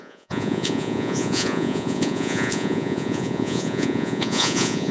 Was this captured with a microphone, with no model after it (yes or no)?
no